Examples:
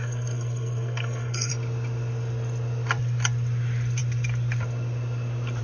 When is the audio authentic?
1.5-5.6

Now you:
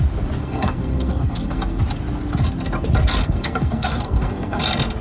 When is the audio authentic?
0.0-0.4; 1.8-3.2; 4.6-5.0

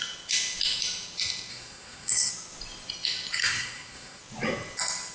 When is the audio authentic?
0.0-1.5; 2.3-3.4; 4.2-5.1

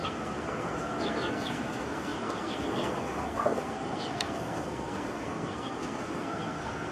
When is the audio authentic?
none

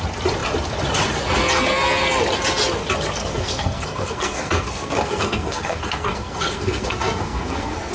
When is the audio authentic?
0.0-3.2